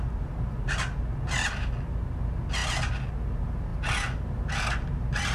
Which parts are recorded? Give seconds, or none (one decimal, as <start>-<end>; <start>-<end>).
0.0-5.3